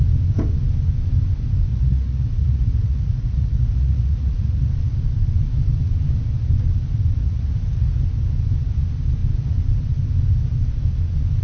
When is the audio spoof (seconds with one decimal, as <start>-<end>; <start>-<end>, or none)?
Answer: 1.7-4.7; 7.2-8.0